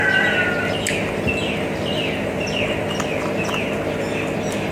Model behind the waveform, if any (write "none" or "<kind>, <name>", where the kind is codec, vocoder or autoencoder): none